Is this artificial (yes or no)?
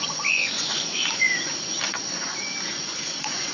yes